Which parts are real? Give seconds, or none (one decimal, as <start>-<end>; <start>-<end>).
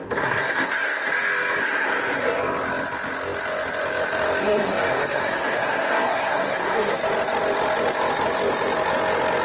1.1-1.6; 2.4-4.4; 7.0-9.4